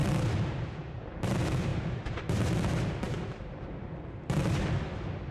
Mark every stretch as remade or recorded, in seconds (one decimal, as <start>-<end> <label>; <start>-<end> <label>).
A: 0.0-1.7 remade; 1.7-2.7 recorded; 2.7-5.3 remade